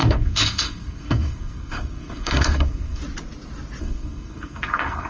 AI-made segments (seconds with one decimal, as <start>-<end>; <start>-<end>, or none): 0.0-3.0; 3.8-5.1